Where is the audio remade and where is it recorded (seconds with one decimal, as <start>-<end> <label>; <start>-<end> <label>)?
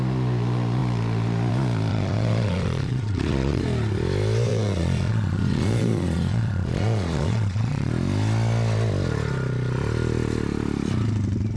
0.0-1.9 recorded; 1.9-3.6 remade; 3.6-4.5 recorded; 4.5-7.9 remade; 7.9-11.6 recorded